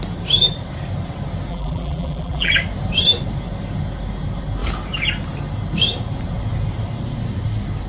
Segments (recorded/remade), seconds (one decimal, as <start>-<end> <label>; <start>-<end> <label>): 0.0-1.5 recorded; 1.5-2.5 remade; 2.5-7.9 recorded